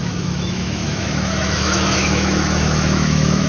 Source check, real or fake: fake